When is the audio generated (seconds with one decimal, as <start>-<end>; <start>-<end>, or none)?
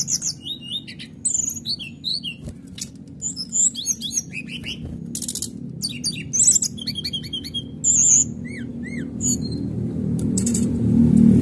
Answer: 2.1-2.9; 8.7-11.0